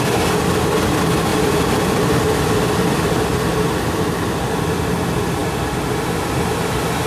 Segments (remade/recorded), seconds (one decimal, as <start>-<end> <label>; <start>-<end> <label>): 0.0-1.3 recorded; 1.3-3.1 remade; 3.1-7.1 recorded